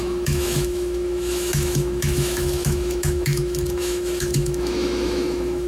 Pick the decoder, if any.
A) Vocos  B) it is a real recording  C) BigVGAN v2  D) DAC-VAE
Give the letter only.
D